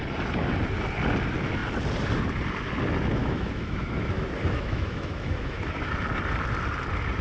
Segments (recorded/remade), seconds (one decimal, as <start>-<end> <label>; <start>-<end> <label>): 0.0-3.2 recorded; 3.2-5.9 remade; 5.9-7.2 recorded